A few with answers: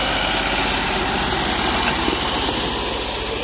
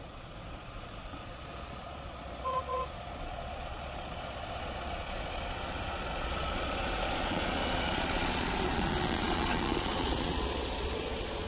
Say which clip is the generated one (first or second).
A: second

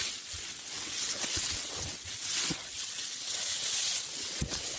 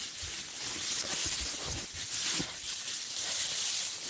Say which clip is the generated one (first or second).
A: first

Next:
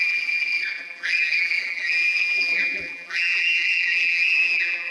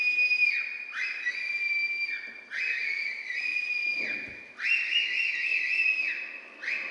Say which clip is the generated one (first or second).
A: first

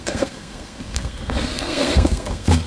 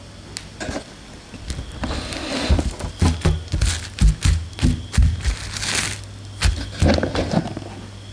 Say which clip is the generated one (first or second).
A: first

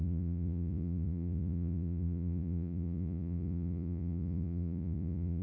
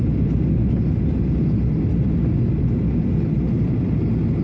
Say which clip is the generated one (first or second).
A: first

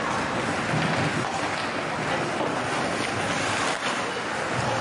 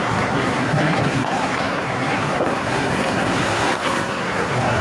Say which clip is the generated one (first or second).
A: second